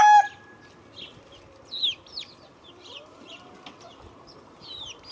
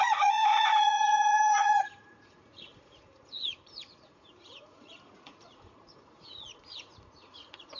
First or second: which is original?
first